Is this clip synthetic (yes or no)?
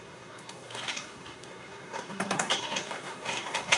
yes